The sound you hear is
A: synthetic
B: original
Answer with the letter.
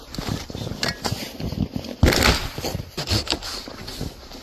B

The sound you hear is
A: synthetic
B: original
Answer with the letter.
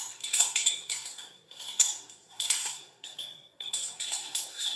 A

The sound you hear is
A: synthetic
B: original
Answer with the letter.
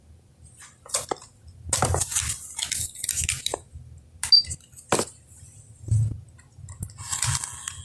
B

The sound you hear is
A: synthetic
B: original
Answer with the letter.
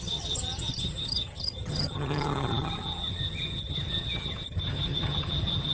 A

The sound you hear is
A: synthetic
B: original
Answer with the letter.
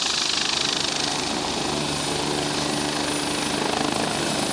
B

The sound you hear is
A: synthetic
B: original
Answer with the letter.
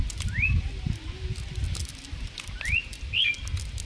B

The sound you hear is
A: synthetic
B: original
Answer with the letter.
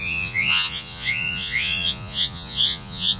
A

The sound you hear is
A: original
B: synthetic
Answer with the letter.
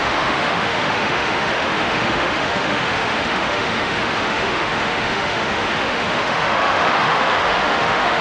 B